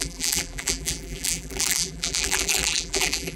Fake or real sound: fake